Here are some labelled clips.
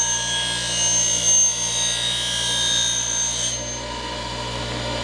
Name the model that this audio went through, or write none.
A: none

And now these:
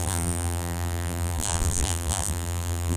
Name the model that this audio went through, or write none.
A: vocoder, BigVGAN v2